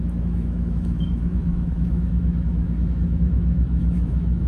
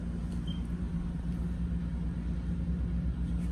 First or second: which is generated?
first